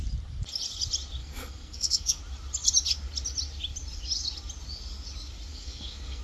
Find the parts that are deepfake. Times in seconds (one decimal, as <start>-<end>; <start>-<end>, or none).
1.2-2.2; 5.5-6.2